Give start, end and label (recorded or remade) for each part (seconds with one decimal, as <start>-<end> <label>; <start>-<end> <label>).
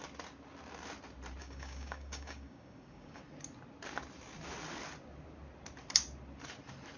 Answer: 0.0-1.4 recorded; 1.4-3.2 remade; 3.2-7.0 recorded